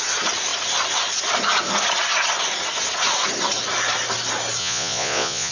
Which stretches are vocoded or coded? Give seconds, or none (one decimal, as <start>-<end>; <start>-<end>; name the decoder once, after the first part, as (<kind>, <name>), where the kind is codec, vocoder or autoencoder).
4.6-5.5 (vocoder, Vocos)